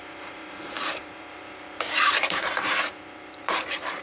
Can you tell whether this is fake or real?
fake